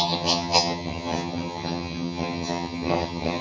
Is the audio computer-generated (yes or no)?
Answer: yes